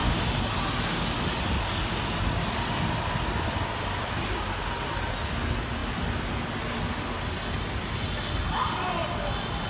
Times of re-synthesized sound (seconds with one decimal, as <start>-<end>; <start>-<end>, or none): 0.0-0.5